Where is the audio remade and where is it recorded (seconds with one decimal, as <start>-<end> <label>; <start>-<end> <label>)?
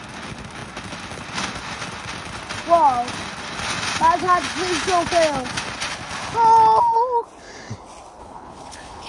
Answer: 0.0-8.2 recorded; 8.2-9.1 remade